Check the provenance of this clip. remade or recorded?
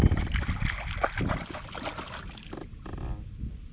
recorded